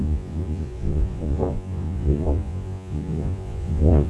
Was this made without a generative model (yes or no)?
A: no